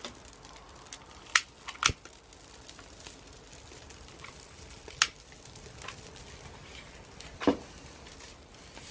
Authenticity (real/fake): real